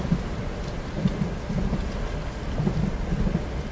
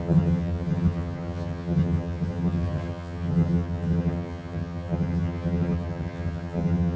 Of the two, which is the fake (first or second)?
second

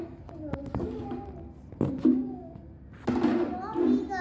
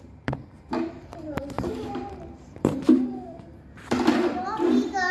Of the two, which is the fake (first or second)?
second